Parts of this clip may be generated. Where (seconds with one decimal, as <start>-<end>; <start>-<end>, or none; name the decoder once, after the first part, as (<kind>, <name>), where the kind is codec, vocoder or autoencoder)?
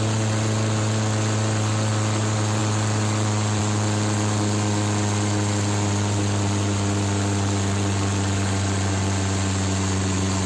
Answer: 2.6-3.6 (vocoder, BigVGAN v2)